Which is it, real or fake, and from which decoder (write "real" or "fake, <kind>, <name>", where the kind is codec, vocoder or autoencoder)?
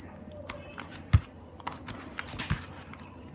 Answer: real